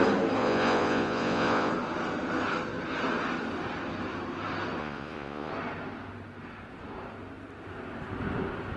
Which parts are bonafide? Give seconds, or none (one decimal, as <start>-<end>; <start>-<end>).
0.0-0.4; 1.7-4.8; 5.5-8.8